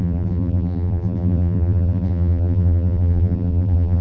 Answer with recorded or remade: remade